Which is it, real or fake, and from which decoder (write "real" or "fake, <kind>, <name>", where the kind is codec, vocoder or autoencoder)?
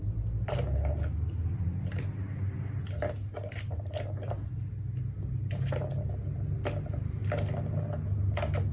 real